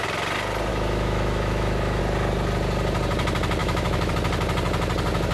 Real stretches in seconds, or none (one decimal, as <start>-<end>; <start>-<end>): 0.0-0.7; 2.0-3.6; 4.1-5.3